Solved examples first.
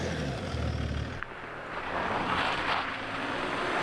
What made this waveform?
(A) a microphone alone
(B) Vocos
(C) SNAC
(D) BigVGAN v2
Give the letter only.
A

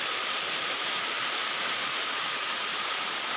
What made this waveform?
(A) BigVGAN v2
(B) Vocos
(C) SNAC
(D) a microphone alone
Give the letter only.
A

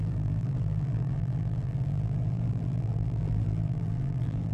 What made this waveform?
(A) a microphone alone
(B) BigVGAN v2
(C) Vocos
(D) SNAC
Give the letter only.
B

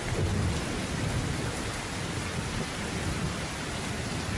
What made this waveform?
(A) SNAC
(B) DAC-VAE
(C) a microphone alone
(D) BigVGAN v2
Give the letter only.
C